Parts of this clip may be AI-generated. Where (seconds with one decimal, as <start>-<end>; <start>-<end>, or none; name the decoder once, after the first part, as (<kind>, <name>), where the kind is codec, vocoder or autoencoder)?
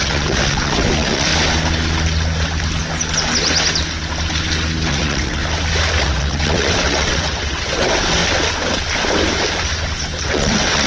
0.0-1.3 (vocoder, WaveNeXt); 4.9-5.4; 6.0-8.2; 10.2-10.9